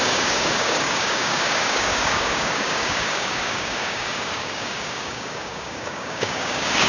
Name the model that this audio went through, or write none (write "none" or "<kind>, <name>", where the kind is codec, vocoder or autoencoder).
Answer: codec, DAC